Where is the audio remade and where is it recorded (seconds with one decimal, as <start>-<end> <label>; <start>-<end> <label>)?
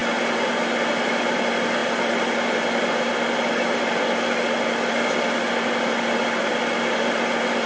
0.0-7.7 recorded